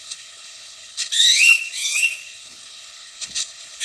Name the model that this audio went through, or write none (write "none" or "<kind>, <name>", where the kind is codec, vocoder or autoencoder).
codec, HILCodec